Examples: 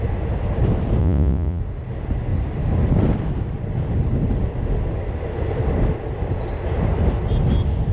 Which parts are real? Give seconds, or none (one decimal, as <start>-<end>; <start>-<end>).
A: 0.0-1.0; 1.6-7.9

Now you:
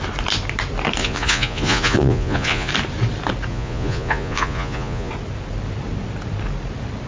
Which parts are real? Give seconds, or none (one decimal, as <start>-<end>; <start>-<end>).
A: 0.0-1.0; 2.7-3.5; 5.1-7.1

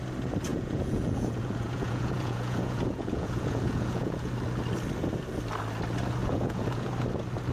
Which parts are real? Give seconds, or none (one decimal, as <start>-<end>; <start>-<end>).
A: 0.0-0.5; 4.3-6.2; 6.9-7.5